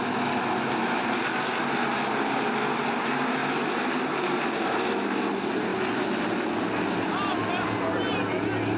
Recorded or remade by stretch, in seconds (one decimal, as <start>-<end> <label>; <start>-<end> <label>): 0.0-8.8 recorded